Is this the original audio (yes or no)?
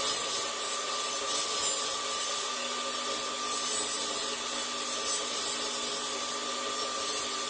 yes